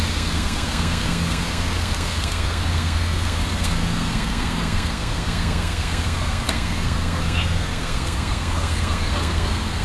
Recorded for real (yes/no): no